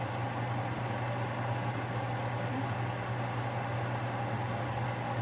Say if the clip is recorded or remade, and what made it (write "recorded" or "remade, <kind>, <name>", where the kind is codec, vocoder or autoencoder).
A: recorded